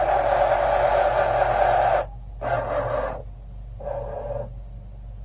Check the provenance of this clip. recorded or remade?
recorded